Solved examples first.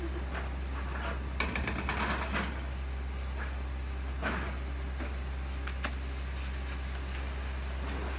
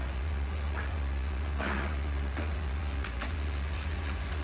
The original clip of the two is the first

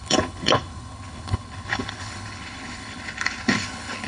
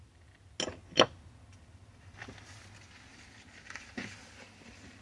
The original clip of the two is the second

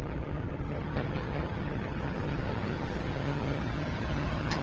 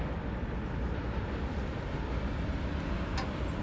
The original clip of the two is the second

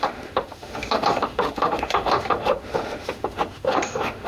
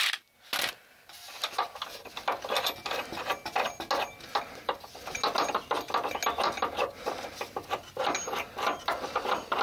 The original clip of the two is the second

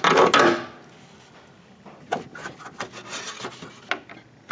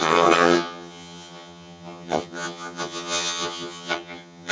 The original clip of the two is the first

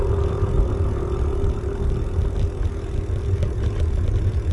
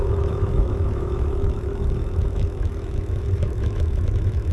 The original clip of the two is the first